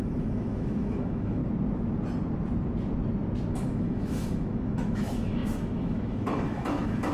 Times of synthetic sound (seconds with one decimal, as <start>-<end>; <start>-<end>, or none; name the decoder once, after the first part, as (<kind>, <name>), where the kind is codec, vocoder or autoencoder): 0.0-1.4 (autoencoder, DAC-VAE); 3.5-7.1